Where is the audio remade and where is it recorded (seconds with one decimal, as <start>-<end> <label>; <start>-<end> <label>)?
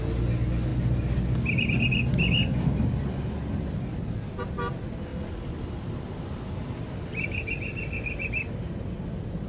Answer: 0.0-9.5 recorded